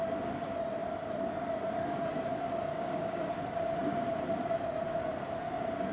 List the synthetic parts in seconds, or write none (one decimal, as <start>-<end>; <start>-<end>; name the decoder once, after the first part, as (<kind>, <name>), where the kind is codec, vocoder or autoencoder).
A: 2.7-3.3 (codec, DAC)